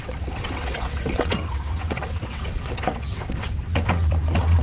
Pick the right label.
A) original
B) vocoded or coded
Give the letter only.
B